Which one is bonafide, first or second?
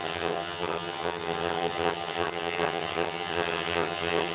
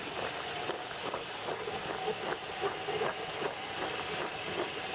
second